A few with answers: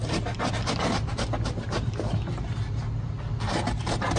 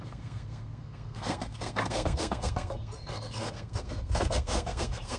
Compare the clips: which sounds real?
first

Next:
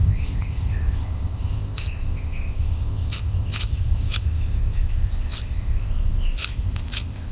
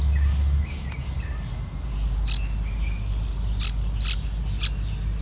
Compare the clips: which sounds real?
second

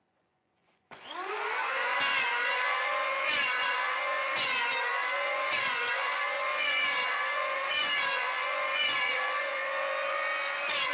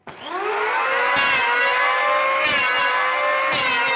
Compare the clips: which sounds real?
second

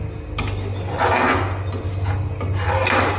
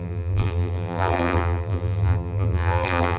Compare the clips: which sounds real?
first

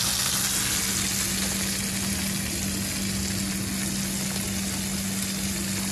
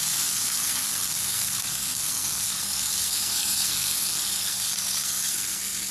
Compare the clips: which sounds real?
first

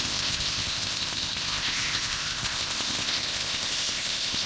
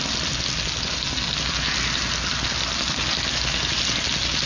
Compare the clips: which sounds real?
second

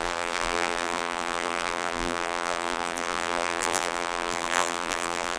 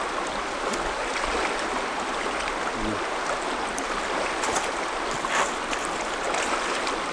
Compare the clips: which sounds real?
second